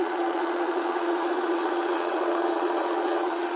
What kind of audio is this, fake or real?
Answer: fake